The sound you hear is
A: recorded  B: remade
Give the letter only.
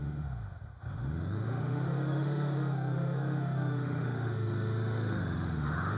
B